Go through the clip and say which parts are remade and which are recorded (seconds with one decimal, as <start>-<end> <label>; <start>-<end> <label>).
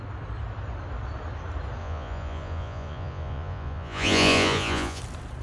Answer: 0.0-1.8 recorded; 1.8-5.0 remade; 5.0-5.4 recorded